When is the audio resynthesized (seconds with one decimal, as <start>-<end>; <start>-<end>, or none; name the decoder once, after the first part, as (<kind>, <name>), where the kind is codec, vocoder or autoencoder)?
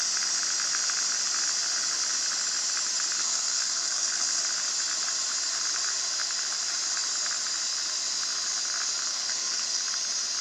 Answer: 3.2-4.4 (codec, SNAC); 9.0-9.8